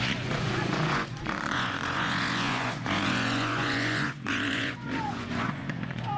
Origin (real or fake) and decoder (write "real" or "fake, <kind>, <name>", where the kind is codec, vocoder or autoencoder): fake, vocoder, Vocos